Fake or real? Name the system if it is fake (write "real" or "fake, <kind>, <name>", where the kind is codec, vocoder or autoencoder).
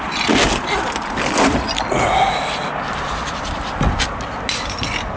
real